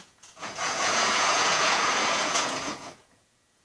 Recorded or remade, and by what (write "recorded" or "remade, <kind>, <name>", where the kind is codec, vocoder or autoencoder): remade, vocoder, Vocos